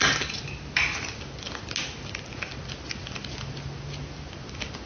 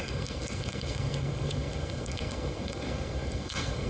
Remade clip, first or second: second